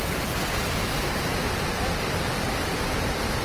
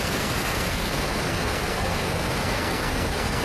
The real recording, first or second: first